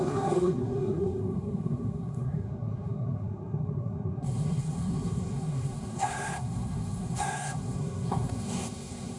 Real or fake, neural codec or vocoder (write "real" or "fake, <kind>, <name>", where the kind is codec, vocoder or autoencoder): fake, codec, SNAC